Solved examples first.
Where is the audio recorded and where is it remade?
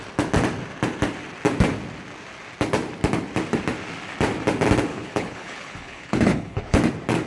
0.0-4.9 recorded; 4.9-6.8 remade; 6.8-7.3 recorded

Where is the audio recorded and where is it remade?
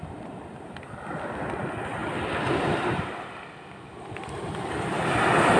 0.0-5.6 recorded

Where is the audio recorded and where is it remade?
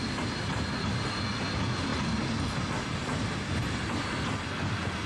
0.0-5.1 recorded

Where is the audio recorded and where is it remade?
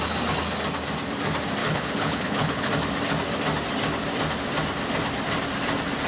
0.0-1.6 recorded; 1.6-2.7 remade; 2.7-6.1 recorded